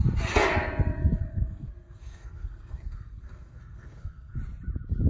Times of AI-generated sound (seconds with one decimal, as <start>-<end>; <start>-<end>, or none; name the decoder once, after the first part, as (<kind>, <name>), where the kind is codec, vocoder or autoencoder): 1.3-4.4 (codec, SNAC)